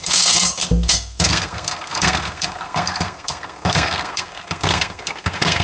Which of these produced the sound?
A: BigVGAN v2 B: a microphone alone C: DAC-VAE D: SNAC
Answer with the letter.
D